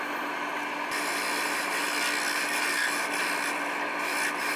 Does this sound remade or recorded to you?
recorded